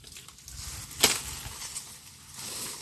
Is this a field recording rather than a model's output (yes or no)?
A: yes